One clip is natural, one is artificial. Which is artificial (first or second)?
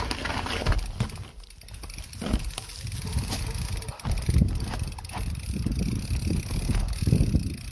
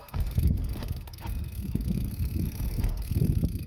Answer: second